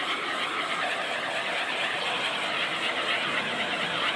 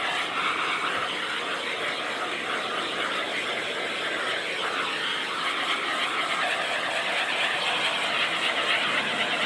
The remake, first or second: first